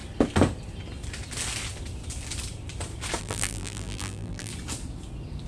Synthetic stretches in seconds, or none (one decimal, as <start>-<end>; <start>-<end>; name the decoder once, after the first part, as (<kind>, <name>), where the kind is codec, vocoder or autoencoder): 3.2-4.5 (vocoder, BigVGAN v2)